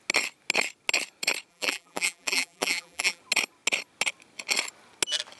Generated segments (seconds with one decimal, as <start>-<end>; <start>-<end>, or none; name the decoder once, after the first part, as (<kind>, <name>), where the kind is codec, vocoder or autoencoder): 1.5-3.2 (vocoder, BigVGAN v2)